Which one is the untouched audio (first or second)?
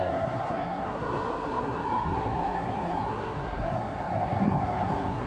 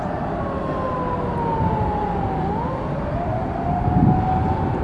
second